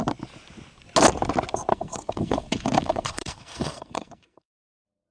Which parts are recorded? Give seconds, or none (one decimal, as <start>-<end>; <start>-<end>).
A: 0.0-1.7